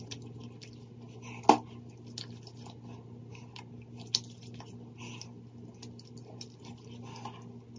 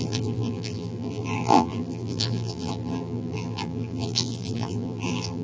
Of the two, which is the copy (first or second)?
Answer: second